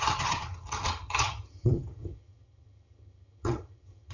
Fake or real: fake